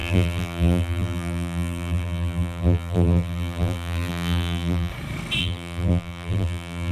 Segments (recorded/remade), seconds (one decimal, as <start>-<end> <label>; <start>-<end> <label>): 0.0-4.9 remade; 4.9-5.4 recorded; 5.4-6.9 remade